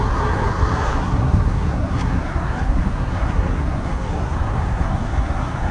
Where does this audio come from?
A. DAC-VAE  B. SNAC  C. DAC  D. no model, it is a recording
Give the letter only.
B